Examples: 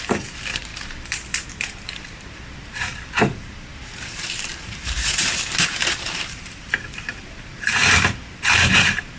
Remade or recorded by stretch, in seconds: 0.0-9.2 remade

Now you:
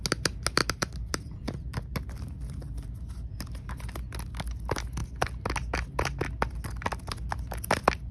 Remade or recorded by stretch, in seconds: 0.0-0.6 recorded; 0.6-2.2 remade; 2.2-8.1 recorded

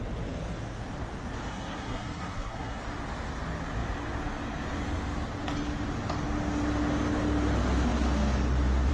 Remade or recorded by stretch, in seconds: 0.0-1.5 recorded; 1.5-2.8 remade; 2.8-8.9 recorded

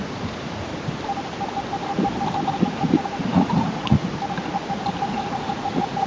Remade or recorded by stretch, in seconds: 0.0-0.7 remade; 0.7-2.6 recorded; 2.6-4.0 remade; 4.0-5.1 recorded; 5.1-6.1 remade

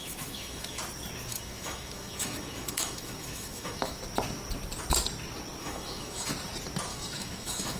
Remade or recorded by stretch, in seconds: 0.0-0.8 remade; 0.8-1.3 recorded; 1.3-4.0 remade; 4.0-5.6 recorded; 5.6-6.3 remade; 6.3-6.9 recorded; 6.9-7.8 remade

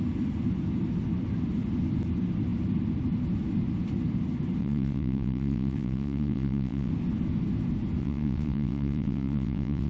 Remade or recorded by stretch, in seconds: 0.0-4.6 recorded; 4.6-6.9 remade; 6.9-8.0 recorded; 8.0-9.9 remade

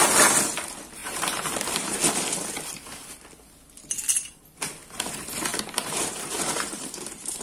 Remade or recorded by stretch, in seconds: 0.0-1.0 recorded; 1.0-2.0 remade; 2.0-5.5 recorded; 5.5-7.4 remade